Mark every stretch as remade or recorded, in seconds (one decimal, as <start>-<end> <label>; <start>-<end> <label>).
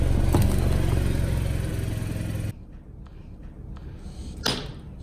0.0-5.0 recorded